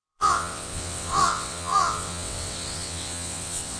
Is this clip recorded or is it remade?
remade